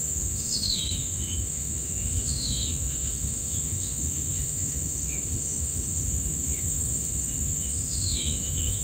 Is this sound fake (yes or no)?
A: yes